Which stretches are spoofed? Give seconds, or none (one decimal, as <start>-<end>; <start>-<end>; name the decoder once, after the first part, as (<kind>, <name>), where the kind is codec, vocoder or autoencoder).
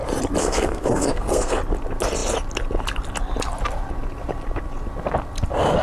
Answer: 0.4-1.6 (codec, SNAC)